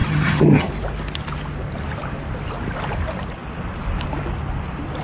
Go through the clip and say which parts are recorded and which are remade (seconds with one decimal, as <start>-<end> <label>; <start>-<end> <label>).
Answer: 0.0-0.7 remade; 0.7-5.0 recorded